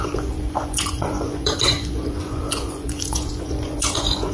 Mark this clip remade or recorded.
remade